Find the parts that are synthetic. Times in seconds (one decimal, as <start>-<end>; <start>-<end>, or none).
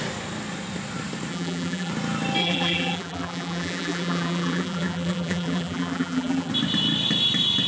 1.3-1.9; 2.4-6.5